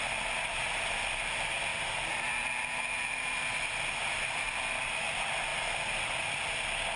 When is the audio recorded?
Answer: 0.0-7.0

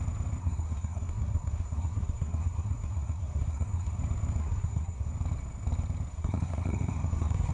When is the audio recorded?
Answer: 0.0-0.4; 4.0-4.4; 5.1-6.1

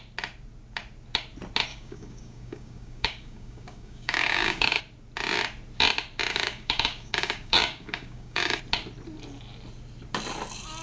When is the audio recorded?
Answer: 0.0-1.7; 4.8-6.3; 8.6-10.8

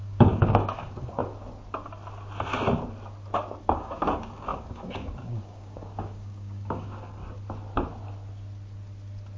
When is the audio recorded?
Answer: 1.2-3.6; 7.2-9.4

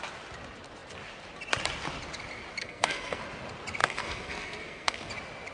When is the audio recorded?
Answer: 0.0-2.6; 3.2-3.8; 5.1-5.5

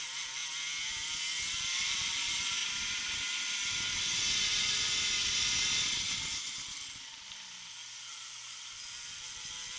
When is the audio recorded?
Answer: 0.4-1.5; 2.6-7.2

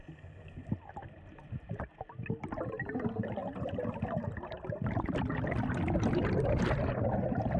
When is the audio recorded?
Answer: 0.0-1.0; 1.8-7.6

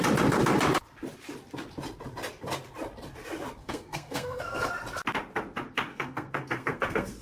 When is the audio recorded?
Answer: 0.0-3.6; 4.7-5.9